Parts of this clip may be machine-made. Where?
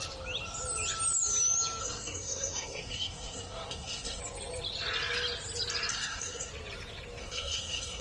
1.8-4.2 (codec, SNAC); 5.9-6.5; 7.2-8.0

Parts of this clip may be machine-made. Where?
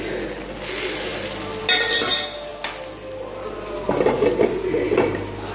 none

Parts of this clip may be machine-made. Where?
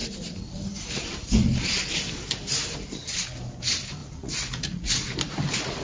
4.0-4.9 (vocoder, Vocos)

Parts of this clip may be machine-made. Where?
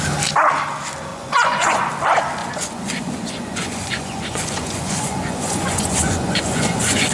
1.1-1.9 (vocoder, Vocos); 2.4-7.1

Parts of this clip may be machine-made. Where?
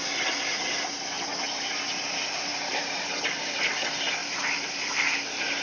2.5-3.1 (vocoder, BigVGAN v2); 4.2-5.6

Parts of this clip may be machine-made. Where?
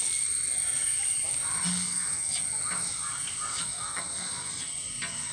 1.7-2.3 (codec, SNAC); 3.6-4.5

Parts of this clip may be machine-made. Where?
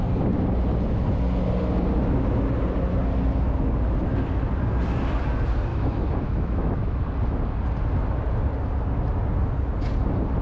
5.7-7.0 (autoencoder, DAC-VAE)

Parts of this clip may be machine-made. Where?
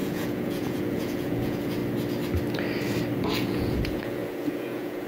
0.0-1.8 (vocoder, Vocos); 3.2-5.1